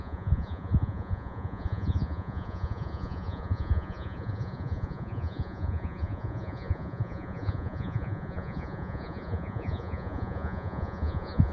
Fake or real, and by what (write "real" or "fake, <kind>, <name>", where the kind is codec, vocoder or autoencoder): fake, vocoder, Vocos